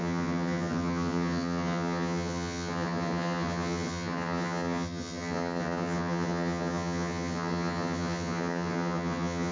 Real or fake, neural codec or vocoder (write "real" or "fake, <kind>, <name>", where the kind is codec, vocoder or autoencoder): fake, vocoder, HiFi-GAN